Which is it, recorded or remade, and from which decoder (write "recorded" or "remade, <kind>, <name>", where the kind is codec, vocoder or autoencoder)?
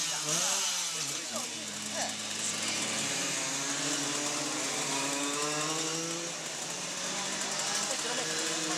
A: recorded